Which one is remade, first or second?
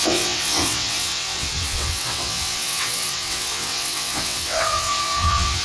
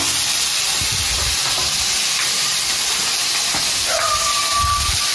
first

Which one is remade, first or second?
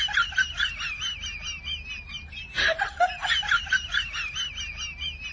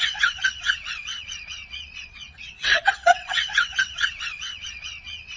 second